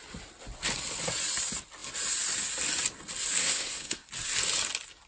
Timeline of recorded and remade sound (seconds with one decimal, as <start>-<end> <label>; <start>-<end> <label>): 0.0-3.4 recorded; 3.4-4.1 remade; 4.1-5.1 recorded